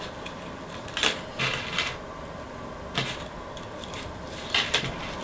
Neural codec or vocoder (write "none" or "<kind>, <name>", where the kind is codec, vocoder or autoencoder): none